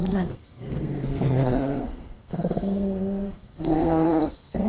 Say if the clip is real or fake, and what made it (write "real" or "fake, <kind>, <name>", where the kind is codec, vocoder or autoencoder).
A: fake, codec, SNAC